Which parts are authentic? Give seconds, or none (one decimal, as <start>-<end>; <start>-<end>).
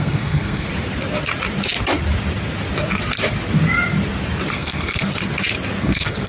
0.7-4.5; 5.1-5.8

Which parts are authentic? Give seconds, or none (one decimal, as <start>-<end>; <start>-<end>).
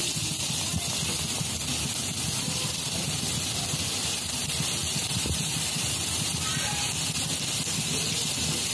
0.0-8.7